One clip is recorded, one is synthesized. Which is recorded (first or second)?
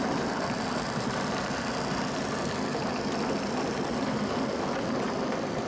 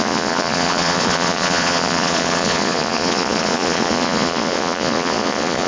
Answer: first